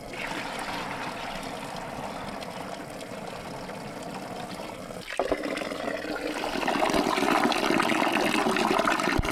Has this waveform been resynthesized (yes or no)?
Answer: no